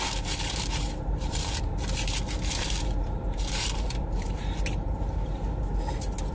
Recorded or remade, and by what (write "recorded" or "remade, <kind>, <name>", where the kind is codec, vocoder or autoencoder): remade, vocoder, BigVGAN v2